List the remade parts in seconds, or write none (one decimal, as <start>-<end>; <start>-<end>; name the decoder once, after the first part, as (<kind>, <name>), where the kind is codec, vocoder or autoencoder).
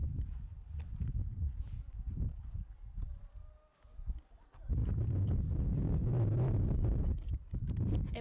0.0-3.3 (vocoder, BigVGAN v2); 4.8-5.3